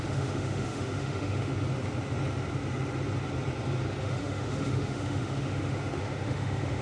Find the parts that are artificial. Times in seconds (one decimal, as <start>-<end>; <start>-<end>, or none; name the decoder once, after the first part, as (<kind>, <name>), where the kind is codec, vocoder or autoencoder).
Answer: 0.0-1.5 (autoencoder, DAC-VAE); 4.0-6.8